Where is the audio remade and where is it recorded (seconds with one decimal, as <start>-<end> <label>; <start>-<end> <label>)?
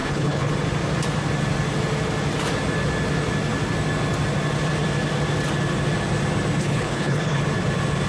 0.0-0.5 remade; 0.5-6.6 recorded; 6.6-7.4 remade; 7.4-8.1 recorded